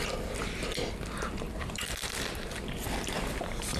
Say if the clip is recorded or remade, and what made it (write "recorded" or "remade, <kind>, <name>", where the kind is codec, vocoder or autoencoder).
recorded